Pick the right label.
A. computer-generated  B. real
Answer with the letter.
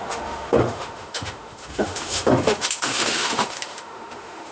A